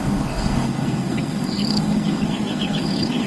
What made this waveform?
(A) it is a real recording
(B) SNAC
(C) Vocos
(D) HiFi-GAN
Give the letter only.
B